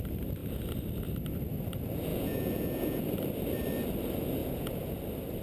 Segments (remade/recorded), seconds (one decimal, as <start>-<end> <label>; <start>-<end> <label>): 0.0-2.1 recorded; 2.1-3.0 remade; 3.0-4.4 recorded; 4.4-5.0 remade; 5.0-5.4 recorded

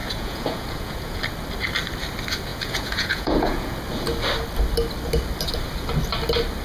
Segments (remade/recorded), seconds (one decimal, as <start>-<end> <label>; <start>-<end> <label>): 0.0-1.2 remade; 1.2-2.5 recorded; 2.5-3.8 remade; 3.8-6.6 recorded

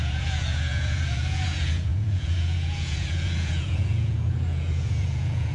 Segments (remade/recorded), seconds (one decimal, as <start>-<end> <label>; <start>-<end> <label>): 0.0-5.5 remade

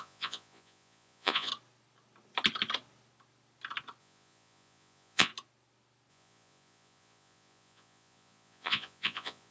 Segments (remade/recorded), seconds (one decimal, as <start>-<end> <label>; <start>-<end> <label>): 0.0-1.5 remade; 1.5-4.0 recorded; 4.0-5.3 remade; 5.3-6.1 recorded; 6.1-9.5 remade

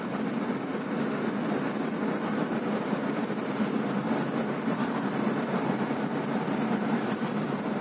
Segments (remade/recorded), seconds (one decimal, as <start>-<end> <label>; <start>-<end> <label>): 0.0-7.8 recorded

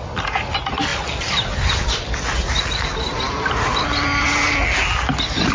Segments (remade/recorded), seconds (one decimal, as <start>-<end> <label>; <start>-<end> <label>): 0.0-5.5 recorded